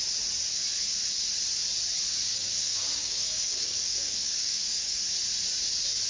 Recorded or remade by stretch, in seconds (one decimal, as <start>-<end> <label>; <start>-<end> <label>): 0.0-2.3 recorded; 2.3-5.0 remade; 5.0-6.1 recorded